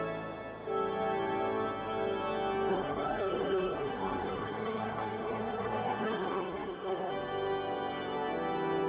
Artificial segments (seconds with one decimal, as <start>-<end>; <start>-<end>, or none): 2.7-7.1